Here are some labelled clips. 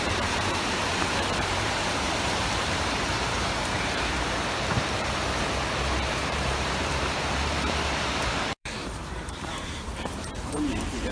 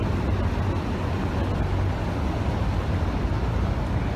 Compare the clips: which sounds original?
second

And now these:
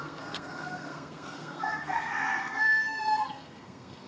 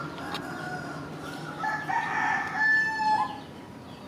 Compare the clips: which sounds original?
second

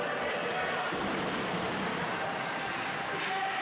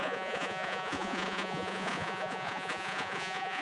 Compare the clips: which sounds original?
first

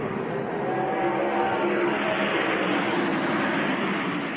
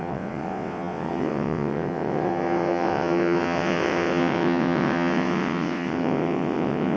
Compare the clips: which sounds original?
first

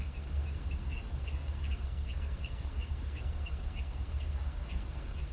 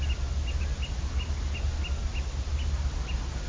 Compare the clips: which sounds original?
second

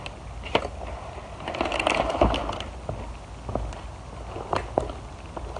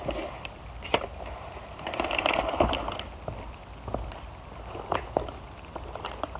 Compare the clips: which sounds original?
first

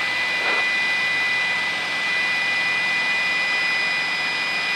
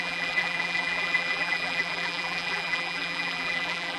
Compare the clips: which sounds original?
first